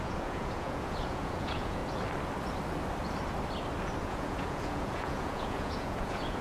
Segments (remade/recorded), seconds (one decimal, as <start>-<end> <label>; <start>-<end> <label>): 0.0-1.8 remade; 1.8-4.0 recorded; 4.0-6.4 remade

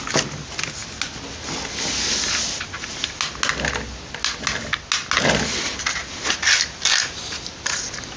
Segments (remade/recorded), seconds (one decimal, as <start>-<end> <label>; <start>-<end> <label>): 0.0-8.2 recorded